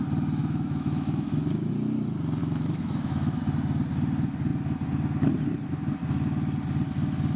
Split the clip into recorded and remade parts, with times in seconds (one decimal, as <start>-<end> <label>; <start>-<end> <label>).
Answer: 0.0-0.4 recorded; 0.4-1.7 remade; 1.7-2.4 recorded; 2.4-3.4 remade; 3.4-7.4 recorded